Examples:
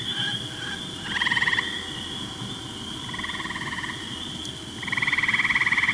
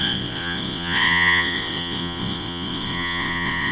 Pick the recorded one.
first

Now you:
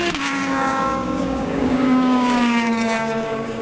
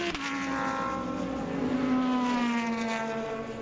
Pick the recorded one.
second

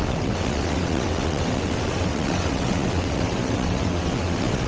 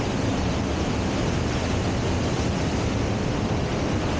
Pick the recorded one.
second